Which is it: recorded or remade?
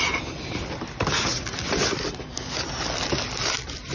recorded